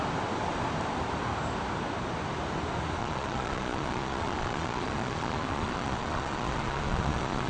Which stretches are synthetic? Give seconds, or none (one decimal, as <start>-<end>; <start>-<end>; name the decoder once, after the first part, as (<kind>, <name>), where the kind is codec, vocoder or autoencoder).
3.0-7.5 (vocoder, Vocos)